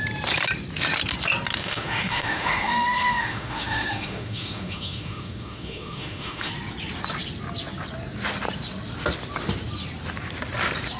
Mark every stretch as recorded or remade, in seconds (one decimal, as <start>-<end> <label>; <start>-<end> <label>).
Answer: 0.0-1.6 recorded; 1.6-6.5 remade; 6.5-11.0 recorded